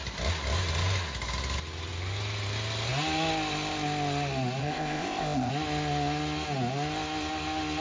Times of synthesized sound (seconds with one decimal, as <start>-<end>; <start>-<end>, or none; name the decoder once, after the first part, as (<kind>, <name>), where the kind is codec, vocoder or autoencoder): 4.6-5.5 (codec, ZipCodec)